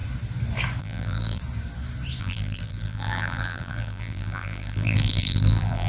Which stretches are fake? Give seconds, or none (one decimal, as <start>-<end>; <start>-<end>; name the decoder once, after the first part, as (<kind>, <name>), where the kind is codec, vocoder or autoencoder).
0.8-1.4 (vocoder, BigVGAN v2); 2.2-5.9